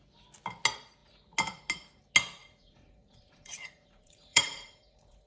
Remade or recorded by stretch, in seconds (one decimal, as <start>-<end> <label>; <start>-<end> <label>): 0.0-2.4 recorded; 2.4-5.3 remade